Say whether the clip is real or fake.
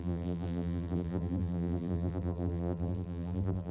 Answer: fake